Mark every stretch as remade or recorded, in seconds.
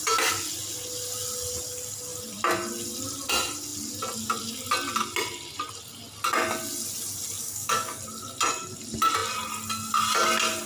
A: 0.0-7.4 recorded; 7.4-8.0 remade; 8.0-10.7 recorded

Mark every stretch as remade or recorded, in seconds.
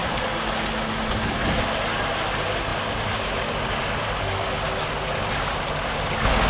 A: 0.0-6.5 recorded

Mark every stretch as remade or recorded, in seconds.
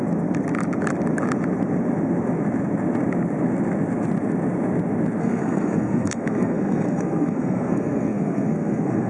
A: 0.0-5.2 recorded; 5.2-9.1 remade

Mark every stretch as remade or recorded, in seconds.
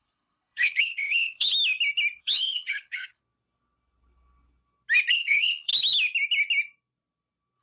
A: 0.0-1.5 remade; 1.5-2.2 recorded; 2.2-3.2 remade; 3.2-5.1 recorded; 5.1-5.7 remade; 5.7-7.6 recorded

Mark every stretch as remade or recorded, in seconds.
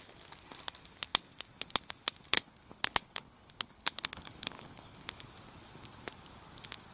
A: 0.0-2.3 recorded; 2.3-5.1 remade; 5.1-6.9 recorded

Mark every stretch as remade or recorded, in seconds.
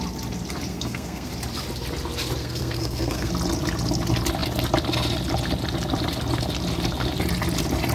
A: 0.0-0.7 recorded; 0.7-1.3 remade; 1.3-2.4 recorded; 2.4-3.3 remade; 3.3-7.9 recorded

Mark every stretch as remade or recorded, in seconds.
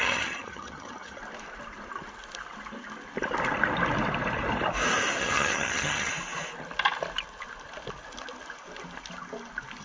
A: 0.0-1.2 remade; 1.2-5.2 recorded; 5.2-6.1 remade; 6.1-9.8 recorded